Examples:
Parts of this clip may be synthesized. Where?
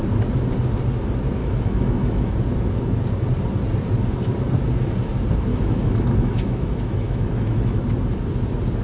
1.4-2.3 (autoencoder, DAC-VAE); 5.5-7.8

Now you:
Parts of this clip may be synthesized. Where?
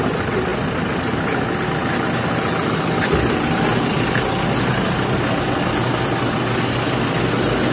none